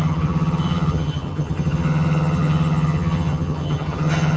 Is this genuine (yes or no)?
no